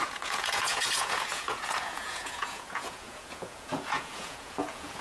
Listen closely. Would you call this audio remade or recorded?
remade